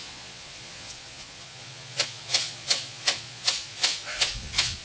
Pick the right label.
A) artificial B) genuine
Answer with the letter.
A